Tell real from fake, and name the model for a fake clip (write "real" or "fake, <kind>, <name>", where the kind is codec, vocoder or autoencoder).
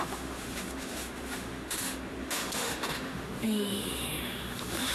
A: fake, autoencoder, DAC-VAE